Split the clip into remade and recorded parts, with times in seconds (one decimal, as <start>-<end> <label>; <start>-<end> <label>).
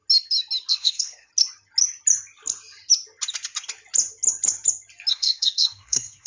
0.0-0.7 recorded; 0.7-1.3 remade; 1.3-5.1 recorded; 5.1-6.3 remade